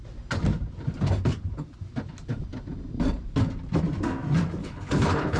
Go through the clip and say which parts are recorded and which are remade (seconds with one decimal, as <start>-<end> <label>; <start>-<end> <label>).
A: 0.0-4.6 recorded; 4.6-5.4 remade